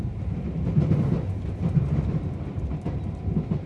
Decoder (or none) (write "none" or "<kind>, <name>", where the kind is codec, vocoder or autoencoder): none